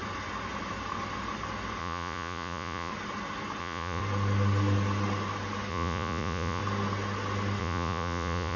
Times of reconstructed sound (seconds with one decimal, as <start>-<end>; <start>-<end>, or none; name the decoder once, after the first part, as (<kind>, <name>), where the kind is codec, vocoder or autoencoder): 1.8-2.9 (vocoder, Vocos); 3.6-4.0; 5.7-6.6; 7.6-8.6